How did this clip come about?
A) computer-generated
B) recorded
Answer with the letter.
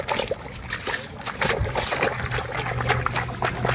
B